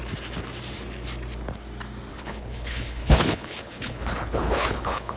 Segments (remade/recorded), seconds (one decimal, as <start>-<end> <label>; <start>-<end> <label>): 0.0-2.1 recorded; 2.1-5.2 remade

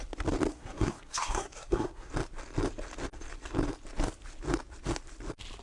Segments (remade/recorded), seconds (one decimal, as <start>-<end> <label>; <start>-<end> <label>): 0.0-0.5 recorded; 0.5-2.1 remade; 2.1-5.6 recorded